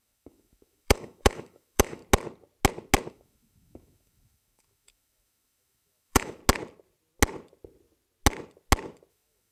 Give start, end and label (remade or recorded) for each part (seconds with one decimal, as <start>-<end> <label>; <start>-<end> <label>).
0.0-2.0 remade; 2.0-3.1 recorded; 3.1-6.4 remade; 6.4-9.1 recorded; 9.1-9.5 remade